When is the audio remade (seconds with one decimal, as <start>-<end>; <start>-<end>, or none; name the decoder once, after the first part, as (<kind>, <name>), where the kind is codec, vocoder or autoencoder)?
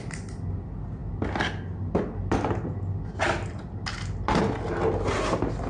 none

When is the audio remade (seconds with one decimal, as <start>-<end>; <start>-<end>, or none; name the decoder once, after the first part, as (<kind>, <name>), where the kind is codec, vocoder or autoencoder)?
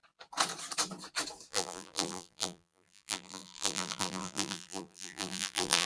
1.5-5.9 (vocoder, BigVGAN v2)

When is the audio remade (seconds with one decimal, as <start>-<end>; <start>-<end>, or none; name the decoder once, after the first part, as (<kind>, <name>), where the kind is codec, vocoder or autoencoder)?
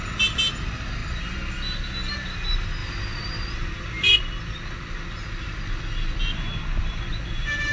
none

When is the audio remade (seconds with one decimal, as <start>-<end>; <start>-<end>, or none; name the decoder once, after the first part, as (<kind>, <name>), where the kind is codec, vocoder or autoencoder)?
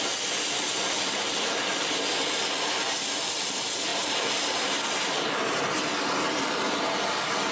3.9-5.6 (vocoder, BigVGAN v2)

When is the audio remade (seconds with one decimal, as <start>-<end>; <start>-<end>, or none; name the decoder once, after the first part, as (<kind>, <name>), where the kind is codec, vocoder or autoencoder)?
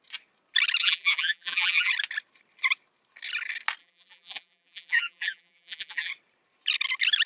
0.8-1.9 (vocoder, BigVGAN v2); 3.8-6.1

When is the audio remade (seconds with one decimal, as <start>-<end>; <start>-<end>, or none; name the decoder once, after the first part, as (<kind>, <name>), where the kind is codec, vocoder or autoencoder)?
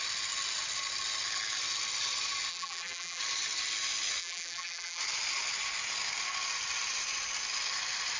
2.5-3.2 (vocoder, BigVGAN v2); 4.2-5.0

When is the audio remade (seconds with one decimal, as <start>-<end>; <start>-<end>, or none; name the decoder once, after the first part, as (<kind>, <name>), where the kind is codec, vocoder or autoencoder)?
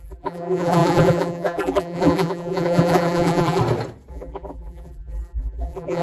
0.0-3.6 (vocoder, BigVGAN v2); 4.1-6.0